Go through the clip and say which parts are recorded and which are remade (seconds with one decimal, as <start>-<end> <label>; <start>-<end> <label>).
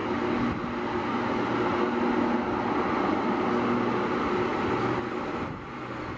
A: 0.0-6.2 recorded